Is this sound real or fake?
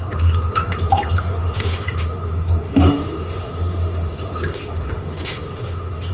fake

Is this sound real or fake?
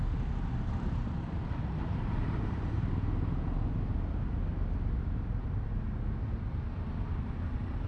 real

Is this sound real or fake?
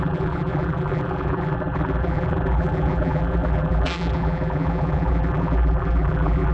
fake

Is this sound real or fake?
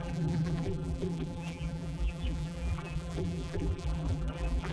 fake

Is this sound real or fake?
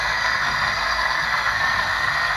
fake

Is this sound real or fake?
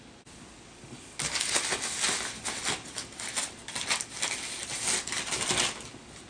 real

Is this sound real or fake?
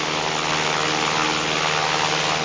real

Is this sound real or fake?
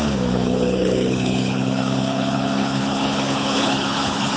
fake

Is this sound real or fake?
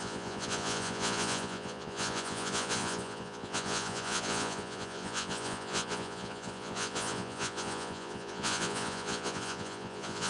fake